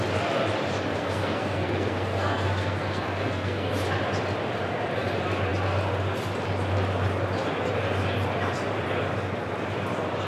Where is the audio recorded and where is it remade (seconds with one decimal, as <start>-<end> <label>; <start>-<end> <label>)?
0.0-0.9 recorded; 0.9-3.7 remade; 3.7-10.3 recorded